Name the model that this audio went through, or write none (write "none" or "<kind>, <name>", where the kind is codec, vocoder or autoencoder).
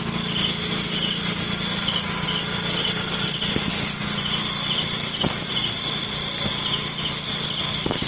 none